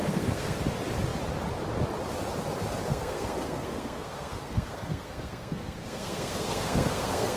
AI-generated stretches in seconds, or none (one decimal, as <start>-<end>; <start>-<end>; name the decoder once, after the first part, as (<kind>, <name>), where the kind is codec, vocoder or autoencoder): 0.0-0.6 (codec, SNAC); 2.9-7.4